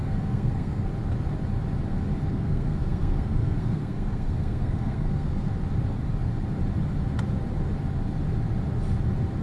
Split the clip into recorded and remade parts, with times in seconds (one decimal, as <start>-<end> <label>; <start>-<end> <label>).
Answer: 0.0-0.9 remade; 0.9-2.3 recorded; 2.3-5.5 remade; 5.5-9.4 recorded